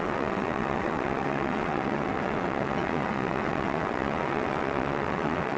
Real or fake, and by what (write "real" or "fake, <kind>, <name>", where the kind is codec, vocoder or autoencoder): fake, vocoder, WaveNeXt